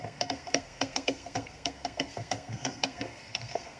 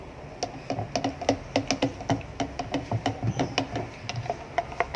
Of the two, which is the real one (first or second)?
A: second